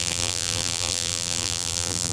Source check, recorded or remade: remade